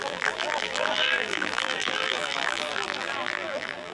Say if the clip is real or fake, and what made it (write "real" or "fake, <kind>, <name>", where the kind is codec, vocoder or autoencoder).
fake, vocoder, BigVGAN v2